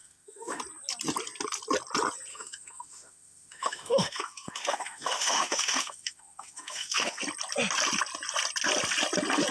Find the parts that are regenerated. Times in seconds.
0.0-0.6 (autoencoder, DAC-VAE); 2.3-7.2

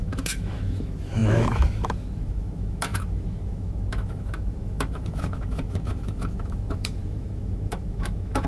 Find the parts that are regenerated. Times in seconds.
0.0-8.5 (autoencoder, DAC-VAE)